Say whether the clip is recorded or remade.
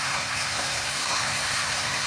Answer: remade